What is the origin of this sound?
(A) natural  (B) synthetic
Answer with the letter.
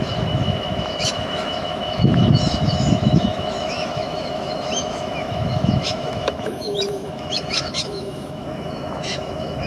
B